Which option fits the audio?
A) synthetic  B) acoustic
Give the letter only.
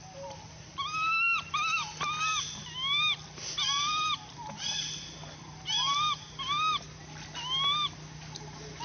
B